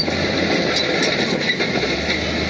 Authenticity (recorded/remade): recorded